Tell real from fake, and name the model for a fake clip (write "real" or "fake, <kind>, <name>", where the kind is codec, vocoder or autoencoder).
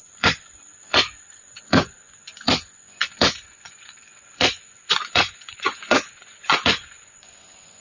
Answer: fake, vocoder, Vocos